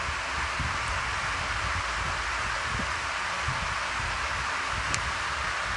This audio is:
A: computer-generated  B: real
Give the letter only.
B